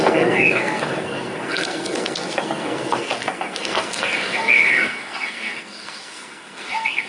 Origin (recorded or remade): remade